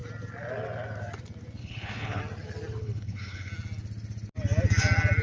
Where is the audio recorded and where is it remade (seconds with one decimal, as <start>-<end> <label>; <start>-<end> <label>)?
0.0-1.6 recorded; 1.6-2.2 remade; 2.2-2.8 recorded; 2.8-3.5 remade; 3.5-5.2 recorded